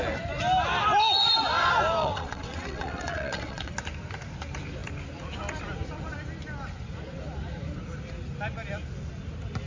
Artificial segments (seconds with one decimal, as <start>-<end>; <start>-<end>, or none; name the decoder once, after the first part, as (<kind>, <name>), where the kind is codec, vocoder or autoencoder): 2.0-3.7 (vocoder, WaveNeXt)